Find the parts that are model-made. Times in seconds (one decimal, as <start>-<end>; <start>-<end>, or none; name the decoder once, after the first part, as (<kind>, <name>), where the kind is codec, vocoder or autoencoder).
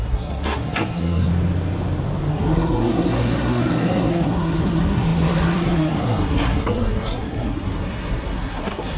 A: 0.0-1.3 (codec, SNAC); 2.3-9.0